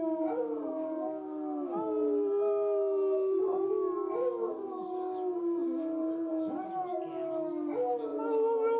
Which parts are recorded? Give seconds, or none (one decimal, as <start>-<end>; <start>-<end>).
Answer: 0.0-8.8